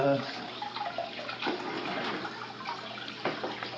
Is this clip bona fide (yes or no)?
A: yes